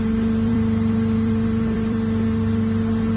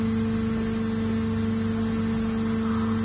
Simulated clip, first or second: first